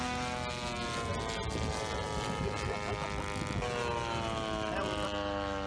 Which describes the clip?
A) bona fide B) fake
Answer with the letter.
A